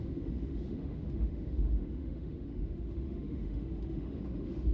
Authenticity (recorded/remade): remade